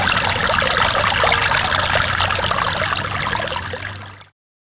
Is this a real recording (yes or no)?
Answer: yes